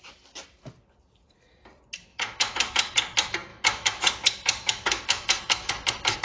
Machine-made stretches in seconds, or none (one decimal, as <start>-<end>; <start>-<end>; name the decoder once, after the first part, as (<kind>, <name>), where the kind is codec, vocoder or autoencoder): 2.1-2.9 (autoencoder, DAC-VAE); 3.5-5.7